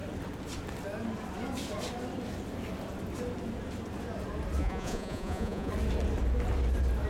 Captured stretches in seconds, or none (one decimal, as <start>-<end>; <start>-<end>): 0.0-4.6; 5.7-7.1